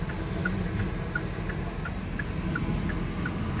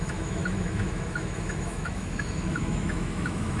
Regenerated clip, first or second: second